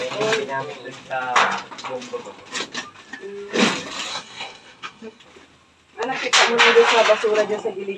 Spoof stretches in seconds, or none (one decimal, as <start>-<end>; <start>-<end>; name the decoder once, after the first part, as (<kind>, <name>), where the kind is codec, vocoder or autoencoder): 4.1-5.2 (codec, SNAC)